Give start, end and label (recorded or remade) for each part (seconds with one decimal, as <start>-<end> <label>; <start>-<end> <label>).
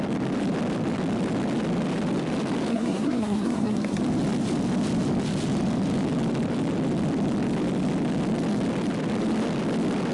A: 0.0-2.7 recorded; 2.7-4.0 remade; 4.0-10.1 recorded